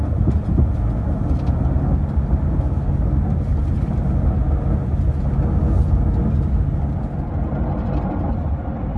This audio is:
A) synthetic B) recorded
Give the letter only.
B